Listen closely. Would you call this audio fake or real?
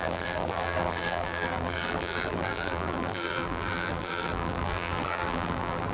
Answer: fake